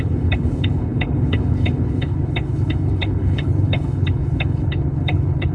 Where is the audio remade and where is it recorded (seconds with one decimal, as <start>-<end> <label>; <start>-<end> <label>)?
0.0-5.5 remade